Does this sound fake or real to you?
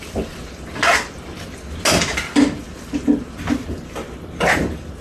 real